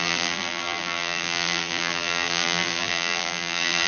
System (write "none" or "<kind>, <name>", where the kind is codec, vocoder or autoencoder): vocoder, BigVGAN v2